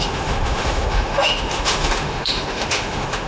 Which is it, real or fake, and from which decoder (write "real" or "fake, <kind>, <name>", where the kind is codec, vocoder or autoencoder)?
fake, autoencoder, DAC-VAE